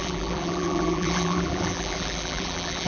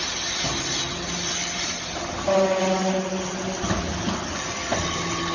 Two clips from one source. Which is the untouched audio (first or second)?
second